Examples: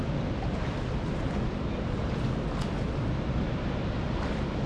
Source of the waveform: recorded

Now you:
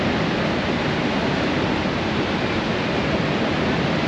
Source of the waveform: recorded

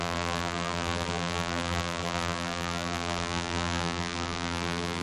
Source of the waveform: remade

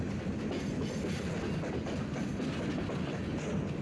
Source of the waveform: recorded